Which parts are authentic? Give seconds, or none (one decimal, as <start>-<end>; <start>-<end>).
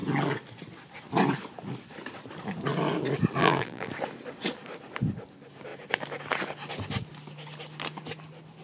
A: 0.0-3.4; 3.9-8.6